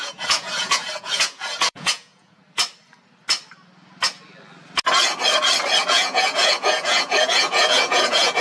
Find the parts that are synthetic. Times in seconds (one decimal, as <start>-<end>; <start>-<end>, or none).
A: 0.0-2.4; 5.8-8.4

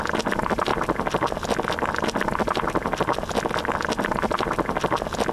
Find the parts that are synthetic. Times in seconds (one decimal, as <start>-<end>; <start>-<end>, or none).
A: none